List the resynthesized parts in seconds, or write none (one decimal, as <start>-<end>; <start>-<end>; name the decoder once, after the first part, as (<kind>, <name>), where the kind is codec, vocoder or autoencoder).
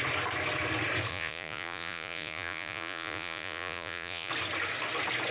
1.1-4.3 (vocoder, Vocos)